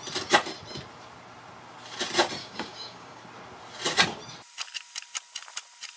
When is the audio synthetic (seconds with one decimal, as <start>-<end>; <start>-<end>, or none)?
2.4-3.2